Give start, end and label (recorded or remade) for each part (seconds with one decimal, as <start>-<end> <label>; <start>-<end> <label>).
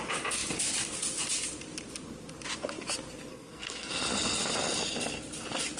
0.0-3.3 recorded; 3.3-3.9 remade; 3.9-5.8 recorded